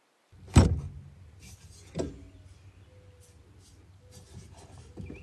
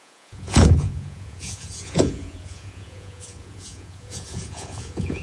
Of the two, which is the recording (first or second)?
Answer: first